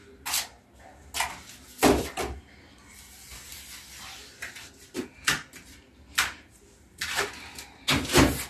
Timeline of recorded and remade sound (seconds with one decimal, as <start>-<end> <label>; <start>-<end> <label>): 0.0-3.5 recorded; 3.5-7.3 remade; 7.3-8.5 recorded